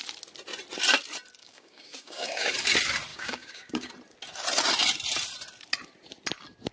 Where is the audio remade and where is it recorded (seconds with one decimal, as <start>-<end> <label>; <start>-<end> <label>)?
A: 0.0-1.4 recorded; 1.4-2.5 remade; 2.5-3.1 recorded; 3.1-3.9 remade; 3.9-6.7 recorded